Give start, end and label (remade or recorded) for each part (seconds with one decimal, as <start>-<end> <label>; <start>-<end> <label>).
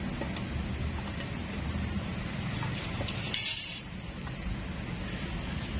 0.0-1.4 recorded; 1.4-4.7 remade; 4.7-5.8 recorded